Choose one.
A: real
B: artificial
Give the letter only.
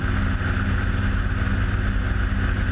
A